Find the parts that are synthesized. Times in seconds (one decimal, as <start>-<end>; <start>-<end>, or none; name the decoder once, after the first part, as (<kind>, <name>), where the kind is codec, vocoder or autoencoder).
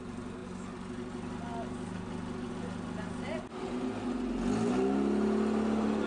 none